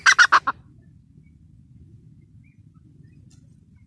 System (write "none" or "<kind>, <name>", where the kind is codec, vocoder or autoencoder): none